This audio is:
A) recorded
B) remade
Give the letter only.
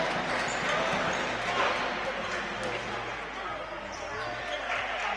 A